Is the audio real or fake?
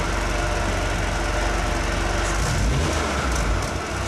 real